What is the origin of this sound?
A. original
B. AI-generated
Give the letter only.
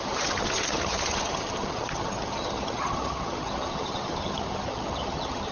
B